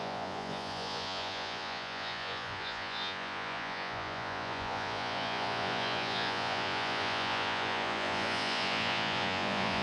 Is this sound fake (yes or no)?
yes